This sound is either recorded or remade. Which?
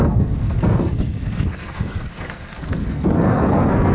remade